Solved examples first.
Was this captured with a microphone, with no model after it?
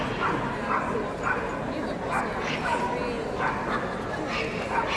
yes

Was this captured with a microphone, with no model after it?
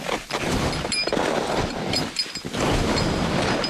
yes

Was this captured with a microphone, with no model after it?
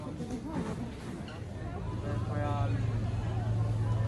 yes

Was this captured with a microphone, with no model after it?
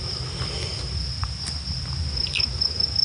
yes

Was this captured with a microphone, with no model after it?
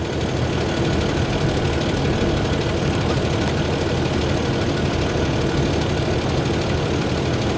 yes